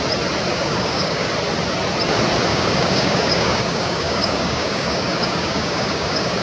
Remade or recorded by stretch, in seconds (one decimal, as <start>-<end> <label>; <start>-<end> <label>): 0.0-0.5 recorded; 0.5-1.3 remade; 1.3-2.5 recorded; 2.5-6.4 remade